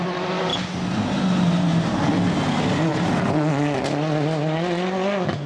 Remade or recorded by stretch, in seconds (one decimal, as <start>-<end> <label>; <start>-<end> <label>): 0.0-5.5 recorded